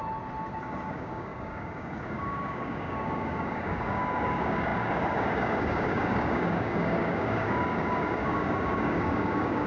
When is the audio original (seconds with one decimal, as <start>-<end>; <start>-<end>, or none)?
0.0-0.6